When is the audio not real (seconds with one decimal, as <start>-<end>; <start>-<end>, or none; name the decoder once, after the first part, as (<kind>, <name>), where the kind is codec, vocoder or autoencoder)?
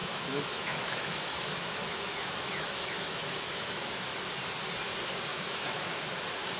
0.0-4.0 (autoencoder, DAC-VAE); 5.3-6.0